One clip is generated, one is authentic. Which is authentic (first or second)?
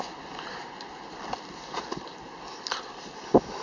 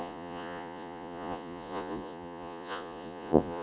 first